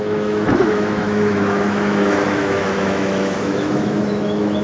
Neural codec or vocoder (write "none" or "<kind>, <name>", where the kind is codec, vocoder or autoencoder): autoencoder, DAC-VAE